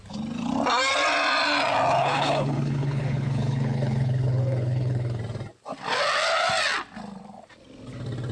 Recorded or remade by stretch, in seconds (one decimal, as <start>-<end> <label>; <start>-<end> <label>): 0.0-2.0 recorded; 2.0-5.2 remade; 5.2-8.3 recorded